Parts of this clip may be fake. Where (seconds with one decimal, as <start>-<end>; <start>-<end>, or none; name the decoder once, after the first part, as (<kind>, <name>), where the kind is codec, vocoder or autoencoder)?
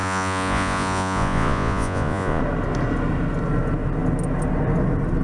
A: 0.0-2.4 (vocoder, Vocos)